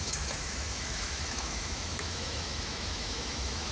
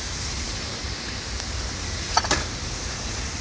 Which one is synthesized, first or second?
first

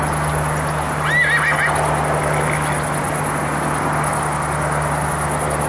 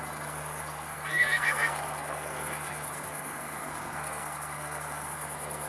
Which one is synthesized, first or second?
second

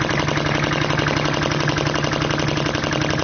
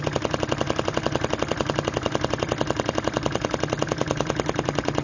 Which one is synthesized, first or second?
second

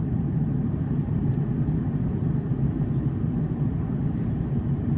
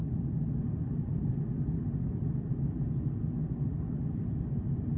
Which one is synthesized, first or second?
first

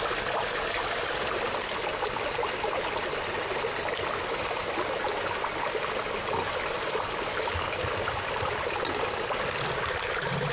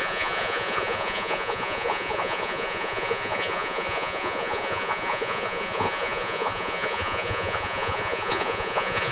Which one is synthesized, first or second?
second